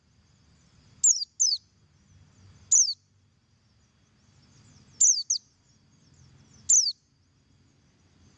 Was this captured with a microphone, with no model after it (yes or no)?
yes